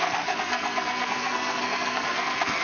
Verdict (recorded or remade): remade